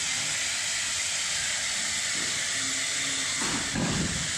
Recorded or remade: recorded